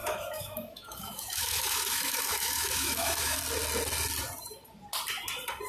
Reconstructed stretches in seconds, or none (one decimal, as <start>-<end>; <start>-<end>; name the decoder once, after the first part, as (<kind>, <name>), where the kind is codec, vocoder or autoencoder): 0.0-3.4 (autoencoder, DAC-VAE)